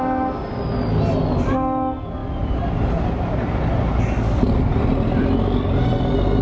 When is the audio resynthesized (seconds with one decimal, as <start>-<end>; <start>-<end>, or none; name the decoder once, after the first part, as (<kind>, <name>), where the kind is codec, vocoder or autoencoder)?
none